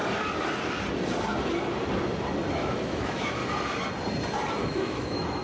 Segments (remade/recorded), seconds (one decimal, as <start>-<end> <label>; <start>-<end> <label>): 0.0-2.5 recorded; 2.5-3.4 remade; 3.4-4.6 recorded; 4.6-5.4 remade